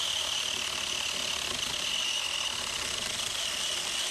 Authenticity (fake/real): real